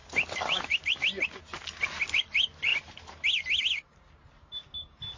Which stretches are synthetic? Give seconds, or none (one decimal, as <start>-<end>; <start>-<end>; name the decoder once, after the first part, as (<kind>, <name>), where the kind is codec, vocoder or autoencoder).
none